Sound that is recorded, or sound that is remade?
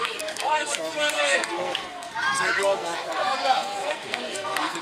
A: remade